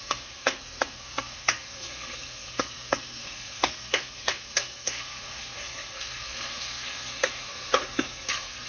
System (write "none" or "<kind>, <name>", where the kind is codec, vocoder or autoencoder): codec, SNAC